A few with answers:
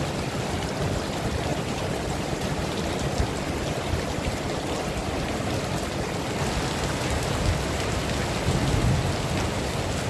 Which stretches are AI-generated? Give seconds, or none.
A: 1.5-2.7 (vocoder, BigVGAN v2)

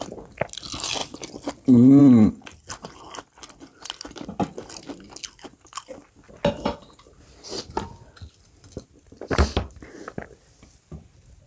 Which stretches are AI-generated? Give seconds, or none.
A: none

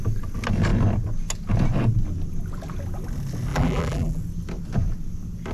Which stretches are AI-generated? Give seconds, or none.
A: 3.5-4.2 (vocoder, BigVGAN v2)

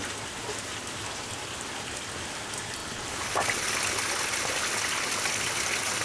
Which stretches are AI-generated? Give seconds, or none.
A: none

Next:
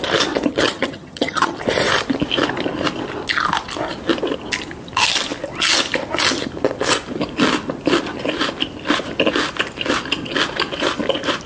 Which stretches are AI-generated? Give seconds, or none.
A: 0.5-1.6 (vocoder, HiFi-GAN)

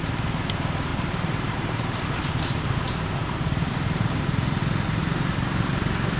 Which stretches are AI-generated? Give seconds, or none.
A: 0.9-4.6 (vocoder, BigVGAN v2); 5.0-5.7

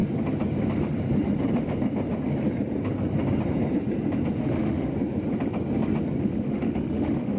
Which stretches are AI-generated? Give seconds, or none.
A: 4.4-4.9 (autoencoder, DAC-VAE); 6.2-7.4